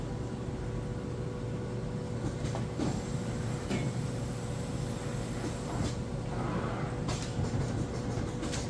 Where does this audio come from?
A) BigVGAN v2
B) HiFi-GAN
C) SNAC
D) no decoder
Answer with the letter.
D